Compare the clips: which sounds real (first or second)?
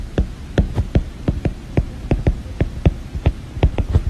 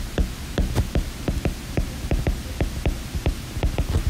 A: second